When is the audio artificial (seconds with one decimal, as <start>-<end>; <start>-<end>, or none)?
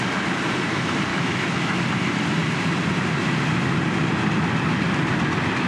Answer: 1.1-1.8